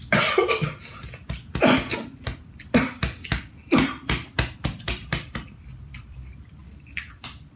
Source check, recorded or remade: remade